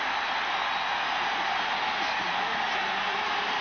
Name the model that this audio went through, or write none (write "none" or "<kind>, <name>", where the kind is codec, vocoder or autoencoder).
none